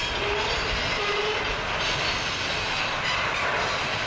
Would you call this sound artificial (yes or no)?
no